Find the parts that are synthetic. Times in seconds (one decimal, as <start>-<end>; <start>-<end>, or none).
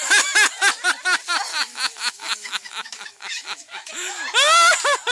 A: 1.5-4.1